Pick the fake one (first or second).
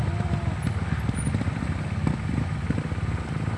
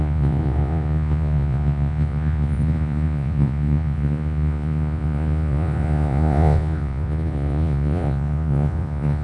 second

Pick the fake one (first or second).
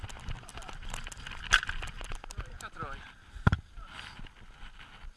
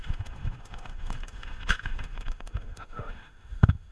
second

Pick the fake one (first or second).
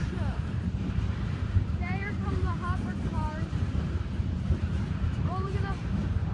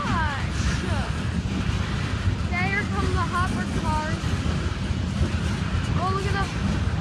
first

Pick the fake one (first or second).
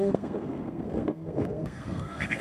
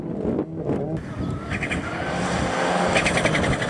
first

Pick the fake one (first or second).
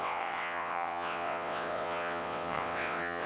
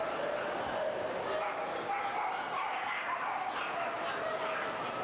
first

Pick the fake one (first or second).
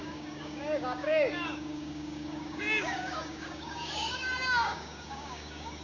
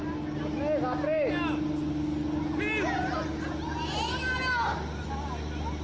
first